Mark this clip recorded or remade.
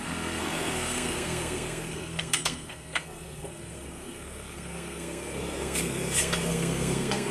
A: remade